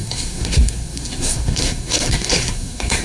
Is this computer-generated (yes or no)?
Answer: yes